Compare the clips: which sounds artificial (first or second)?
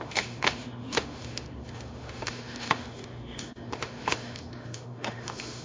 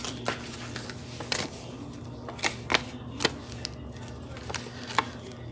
first